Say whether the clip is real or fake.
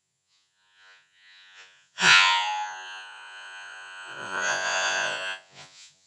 fake